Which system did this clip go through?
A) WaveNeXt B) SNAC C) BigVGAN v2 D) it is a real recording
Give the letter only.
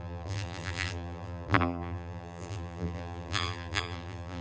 C